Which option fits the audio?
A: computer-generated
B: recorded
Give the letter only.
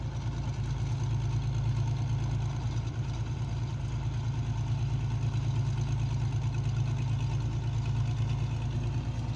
B